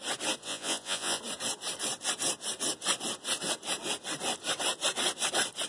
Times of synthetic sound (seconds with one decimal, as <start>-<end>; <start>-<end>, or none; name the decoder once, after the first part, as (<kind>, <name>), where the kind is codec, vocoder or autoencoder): 0.4-1.2 (vocoder, Vocos)